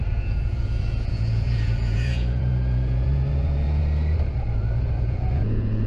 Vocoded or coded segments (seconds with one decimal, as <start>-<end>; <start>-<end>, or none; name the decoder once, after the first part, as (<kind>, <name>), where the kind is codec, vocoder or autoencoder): 0.0-3.8 (vocoder, Vocos); 5.0-5.9